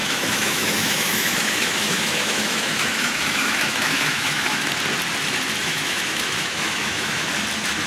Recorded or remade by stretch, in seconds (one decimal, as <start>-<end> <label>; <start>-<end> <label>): 0.0-4.7 remade; 4.7-5.6 recorded; 5.6-7.3 remade; 7.3-7.9 recorded